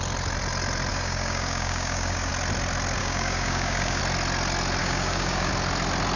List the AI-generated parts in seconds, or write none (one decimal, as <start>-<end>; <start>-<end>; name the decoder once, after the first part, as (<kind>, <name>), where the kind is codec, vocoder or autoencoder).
0.9-2.3 (codec, DAC); 3.0-4.0; 4.8-5.5